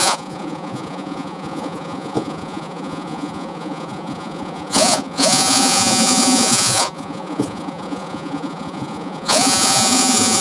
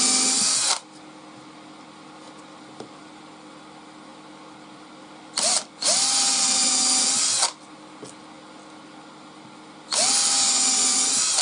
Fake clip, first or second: first